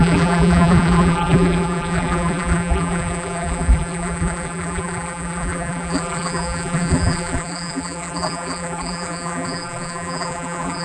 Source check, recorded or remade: remade